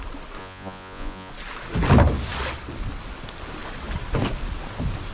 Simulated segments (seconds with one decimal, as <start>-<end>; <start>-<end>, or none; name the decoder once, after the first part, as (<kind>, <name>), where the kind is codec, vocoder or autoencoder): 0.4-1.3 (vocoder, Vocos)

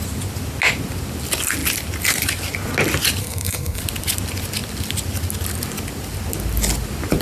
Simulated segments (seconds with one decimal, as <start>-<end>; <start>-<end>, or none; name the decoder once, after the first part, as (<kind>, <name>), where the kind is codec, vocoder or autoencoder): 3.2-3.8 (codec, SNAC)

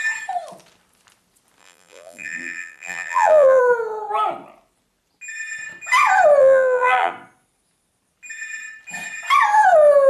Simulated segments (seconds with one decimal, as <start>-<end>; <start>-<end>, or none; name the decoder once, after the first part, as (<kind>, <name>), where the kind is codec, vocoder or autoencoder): 1.6-3.6 (vocoder, BigVGAN v2); 6.4-7.1

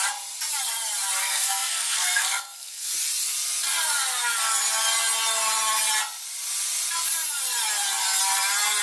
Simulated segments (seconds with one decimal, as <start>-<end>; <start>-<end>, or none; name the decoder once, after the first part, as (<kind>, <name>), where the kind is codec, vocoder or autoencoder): 1.2-2.9 (codec, SNAC)

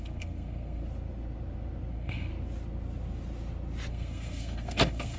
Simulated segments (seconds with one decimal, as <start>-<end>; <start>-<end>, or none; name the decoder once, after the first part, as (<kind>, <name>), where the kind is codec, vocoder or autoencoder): 0.0-0.8 (codec, SNAC); 1.9-2.3; 3.9-5.2

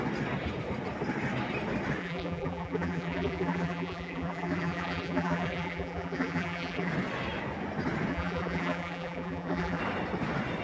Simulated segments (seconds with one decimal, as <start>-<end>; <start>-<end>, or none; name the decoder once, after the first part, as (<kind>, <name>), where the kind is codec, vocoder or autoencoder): 2.0-6.9 (vocoder, BigVGAN v2); 8.1-9.8

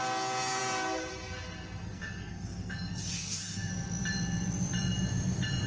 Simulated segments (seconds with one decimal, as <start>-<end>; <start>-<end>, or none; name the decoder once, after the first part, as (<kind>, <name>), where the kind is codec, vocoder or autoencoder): 1.9-3.7 (codec, SNAC)

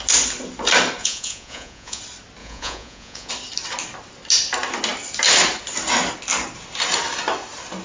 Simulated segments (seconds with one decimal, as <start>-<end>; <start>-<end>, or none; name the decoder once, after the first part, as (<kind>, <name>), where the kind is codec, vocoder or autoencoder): 1.0-2.0 (vocoder, Vocos); 2.4-3.3